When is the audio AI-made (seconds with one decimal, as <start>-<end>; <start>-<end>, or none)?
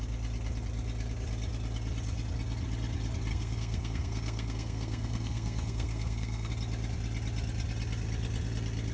3.3-6.5